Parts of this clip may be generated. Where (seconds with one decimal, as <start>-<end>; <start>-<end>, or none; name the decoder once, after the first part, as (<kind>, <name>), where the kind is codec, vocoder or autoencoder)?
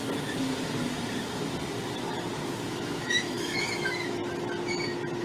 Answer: 2.7-4.2 (autoencoder, DAC-VAE)